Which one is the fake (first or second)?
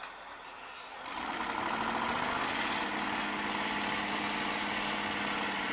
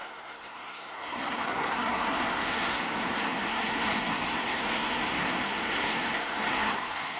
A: second